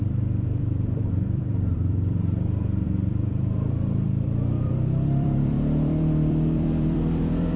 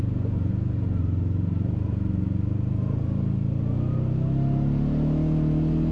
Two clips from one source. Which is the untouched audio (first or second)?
second